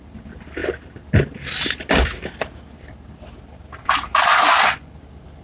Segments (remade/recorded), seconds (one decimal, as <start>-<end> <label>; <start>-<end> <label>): 0.0-4.3 recorded; 4.3-4.9 remade; 4.9-5.4 recorded